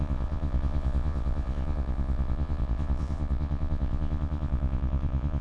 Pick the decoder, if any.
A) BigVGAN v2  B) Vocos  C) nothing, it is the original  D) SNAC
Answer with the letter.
B